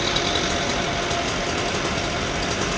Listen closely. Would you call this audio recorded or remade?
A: recorded